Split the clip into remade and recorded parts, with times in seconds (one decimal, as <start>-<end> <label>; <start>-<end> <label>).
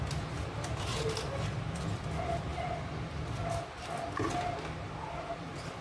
0.0-5.8 recorded